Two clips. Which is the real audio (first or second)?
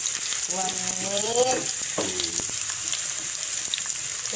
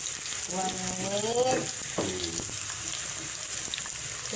second